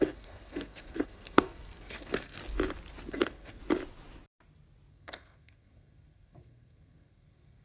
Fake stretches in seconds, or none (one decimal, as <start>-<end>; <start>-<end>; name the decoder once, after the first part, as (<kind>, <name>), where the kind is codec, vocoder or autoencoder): 0.0-2.4 (codec, SNAC); 3.1-3.6; 4.9-7.6